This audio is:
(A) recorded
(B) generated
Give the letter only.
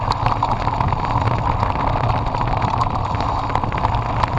A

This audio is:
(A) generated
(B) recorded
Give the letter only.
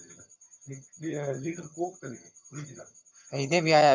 A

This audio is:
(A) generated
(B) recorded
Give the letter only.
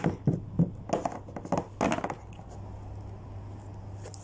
B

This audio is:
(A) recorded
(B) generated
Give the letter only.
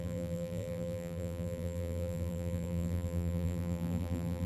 B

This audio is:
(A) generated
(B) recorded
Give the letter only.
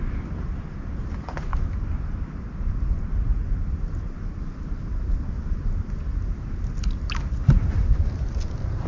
B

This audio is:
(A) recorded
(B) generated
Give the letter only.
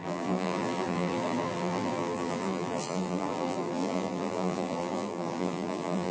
B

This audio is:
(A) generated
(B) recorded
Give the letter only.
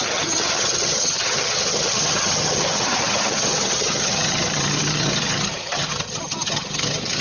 A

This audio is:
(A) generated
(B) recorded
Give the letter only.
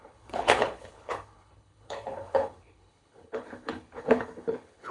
A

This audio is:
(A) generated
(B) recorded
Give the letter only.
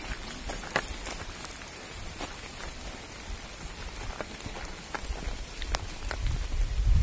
B